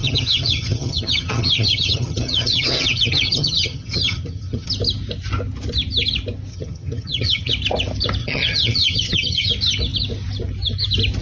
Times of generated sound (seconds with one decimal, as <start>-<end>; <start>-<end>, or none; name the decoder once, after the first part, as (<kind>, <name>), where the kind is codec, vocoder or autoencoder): 0.0-4.7 (vocoder, HiFi-GAN); 6.5-7.5; 8.2-9.5